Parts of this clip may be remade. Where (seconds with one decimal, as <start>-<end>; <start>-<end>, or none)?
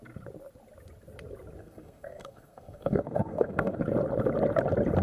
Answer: 1.6-3.8